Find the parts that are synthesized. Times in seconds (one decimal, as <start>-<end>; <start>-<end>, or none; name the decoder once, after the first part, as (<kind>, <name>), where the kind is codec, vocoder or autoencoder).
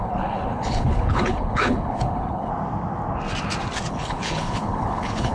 0.0-2.5 (codec, HILCodec); 3.9-5.3